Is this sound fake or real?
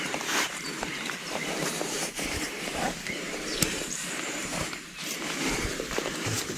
fake